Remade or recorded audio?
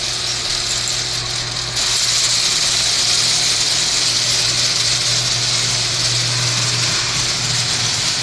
recorded